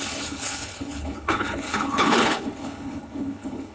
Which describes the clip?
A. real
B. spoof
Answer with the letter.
B